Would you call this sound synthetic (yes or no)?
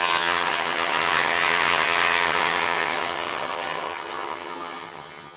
yes